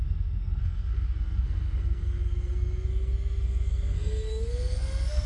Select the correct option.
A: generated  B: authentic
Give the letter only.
A